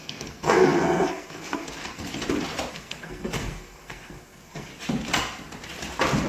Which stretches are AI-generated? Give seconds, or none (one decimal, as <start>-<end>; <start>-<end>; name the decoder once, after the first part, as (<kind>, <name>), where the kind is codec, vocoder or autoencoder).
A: 0.0-2.1 (codec, SNAC); 2.7-4.7

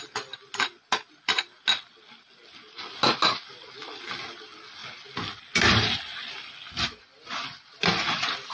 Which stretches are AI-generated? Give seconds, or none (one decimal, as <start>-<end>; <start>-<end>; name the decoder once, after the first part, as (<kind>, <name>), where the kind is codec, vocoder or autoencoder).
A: none

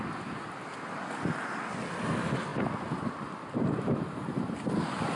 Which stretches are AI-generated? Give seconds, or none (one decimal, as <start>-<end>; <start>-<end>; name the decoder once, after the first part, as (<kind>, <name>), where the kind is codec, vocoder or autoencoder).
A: 2.5-3.1 (vocoder, BigVGAN v2)

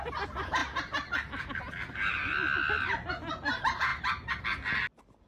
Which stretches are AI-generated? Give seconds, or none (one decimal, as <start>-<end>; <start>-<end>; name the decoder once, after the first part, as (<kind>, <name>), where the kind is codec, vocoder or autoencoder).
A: none